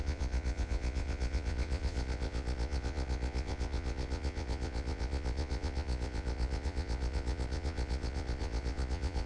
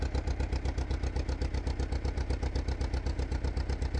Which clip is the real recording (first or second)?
second